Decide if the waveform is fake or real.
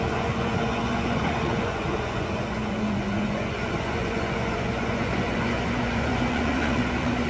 fake